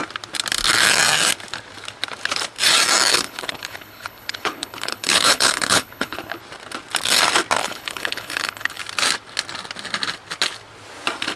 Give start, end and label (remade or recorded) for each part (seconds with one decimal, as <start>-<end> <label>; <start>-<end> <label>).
0.0-3.1 recorded; 3.1-6.4 remade; 6.4-7.6 recorded; 7.6-8.8 remade; 8.8-11.4 recorded